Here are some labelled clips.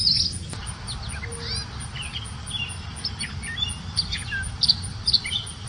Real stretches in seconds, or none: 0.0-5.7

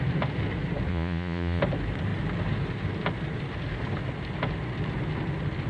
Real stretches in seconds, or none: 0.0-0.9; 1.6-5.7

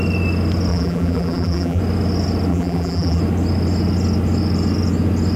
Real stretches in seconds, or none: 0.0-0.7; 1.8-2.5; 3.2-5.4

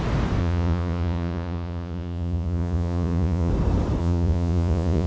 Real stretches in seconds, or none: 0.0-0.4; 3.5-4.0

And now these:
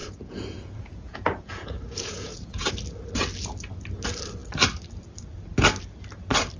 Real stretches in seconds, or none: 2.7-6.6

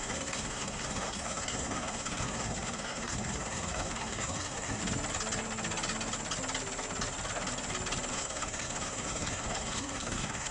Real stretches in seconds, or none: 4.8-8.1